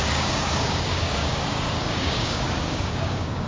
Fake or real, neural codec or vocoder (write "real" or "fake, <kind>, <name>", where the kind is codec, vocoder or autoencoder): fake, codec, DAC